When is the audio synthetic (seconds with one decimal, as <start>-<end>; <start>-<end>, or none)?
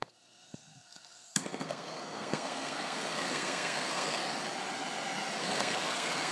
0.0-4.2; 5.4-6.3